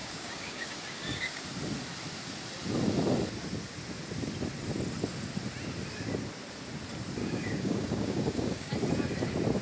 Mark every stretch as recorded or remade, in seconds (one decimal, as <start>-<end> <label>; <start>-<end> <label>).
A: 0.0-1.4 remade; 1.4-7.2 recorded; 7.2-8.7 remade; 8.7-9.6 recorded